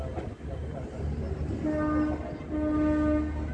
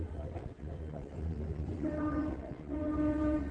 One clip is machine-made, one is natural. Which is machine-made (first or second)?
second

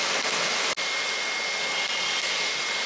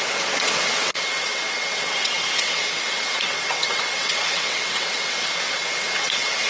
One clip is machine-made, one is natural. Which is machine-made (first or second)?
second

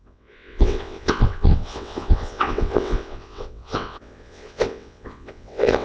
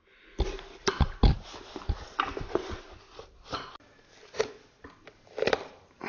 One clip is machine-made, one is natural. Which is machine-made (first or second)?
first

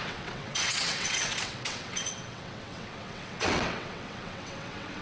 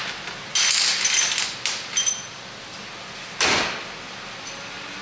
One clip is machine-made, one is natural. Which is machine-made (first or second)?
first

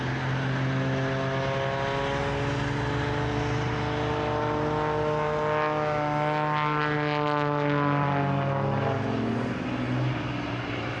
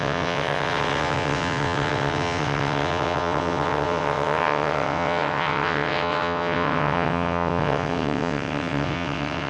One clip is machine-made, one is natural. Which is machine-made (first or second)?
second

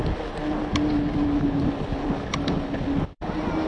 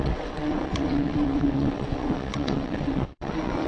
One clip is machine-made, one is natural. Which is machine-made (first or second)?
second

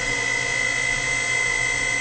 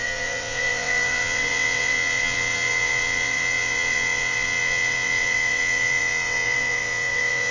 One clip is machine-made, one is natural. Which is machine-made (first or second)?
second